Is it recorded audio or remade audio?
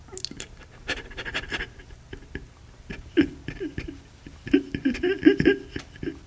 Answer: recorded